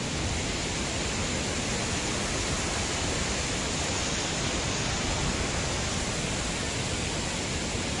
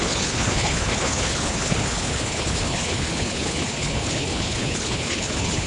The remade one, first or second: second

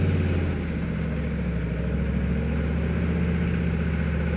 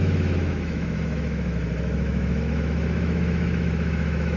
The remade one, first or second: second